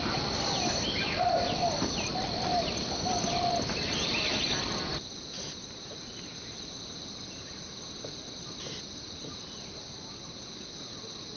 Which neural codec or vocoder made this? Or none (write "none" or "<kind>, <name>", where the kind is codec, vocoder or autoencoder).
none